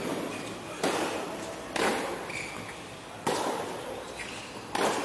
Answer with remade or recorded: recorded